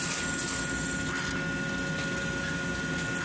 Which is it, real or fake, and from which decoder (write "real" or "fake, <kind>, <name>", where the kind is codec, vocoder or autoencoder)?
real